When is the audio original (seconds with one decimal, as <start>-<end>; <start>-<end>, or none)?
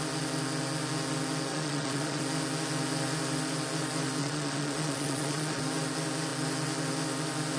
0.0-1.5; 2.2-4.2; 5.6-7.6